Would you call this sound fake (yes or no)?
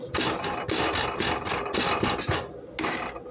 no